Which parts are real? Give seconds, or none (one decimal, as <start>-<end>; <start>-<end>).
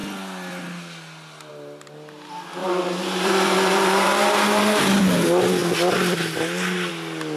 0.0-2.6; 5.0-7.4